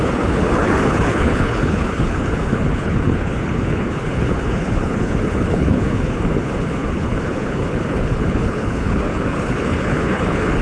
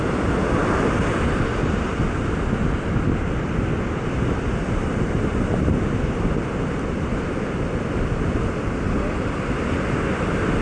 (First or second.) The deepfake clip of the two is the first